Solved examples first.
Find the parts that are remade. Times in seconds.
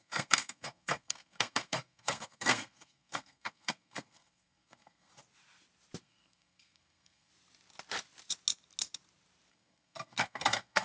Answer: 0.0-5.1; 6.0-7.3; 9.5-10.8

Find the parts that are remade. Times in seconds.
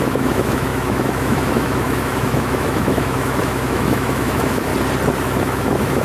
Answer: 0.0-4.7; 5.2-6.0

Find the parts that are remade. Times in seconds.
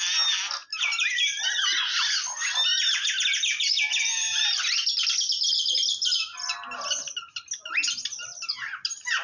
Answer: none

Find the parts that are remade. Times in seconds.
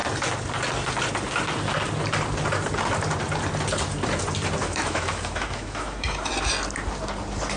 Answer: 4.6-6.3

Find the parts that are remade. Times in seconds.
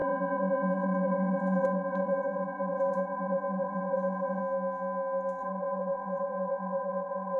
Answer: 0.0-4.4; 5.4-7.4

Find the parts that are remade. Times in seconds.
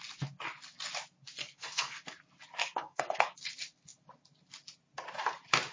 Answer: 1.4-2.0; 2.6-3.4